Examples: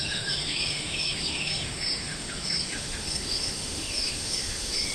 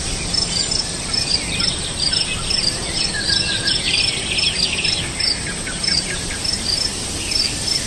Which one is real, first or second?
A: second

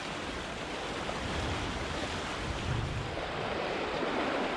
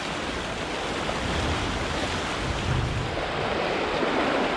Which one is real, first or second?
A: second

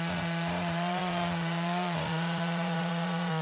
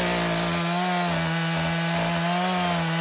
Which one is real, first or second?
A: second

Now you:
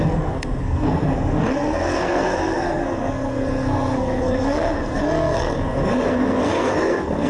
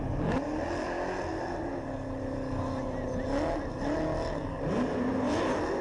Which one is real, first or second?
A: second